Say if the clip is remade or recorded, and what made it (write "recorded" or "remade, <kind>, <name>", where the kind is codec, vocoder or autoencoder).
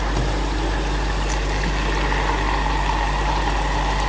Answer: recorded